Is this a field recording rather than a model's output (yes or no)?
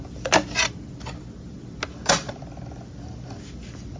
yes